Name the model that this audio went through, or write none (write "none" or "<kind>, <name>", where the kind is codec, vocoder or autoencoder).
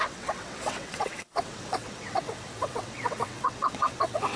vocoder, WaveNeXt